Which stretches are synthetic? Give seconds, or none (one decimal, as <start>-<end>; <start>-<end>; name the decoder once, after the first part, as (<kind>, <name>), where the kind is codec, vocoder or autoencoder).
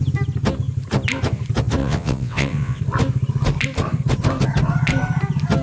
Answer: 1.8-2.8 (vocoder, WaveNeXt)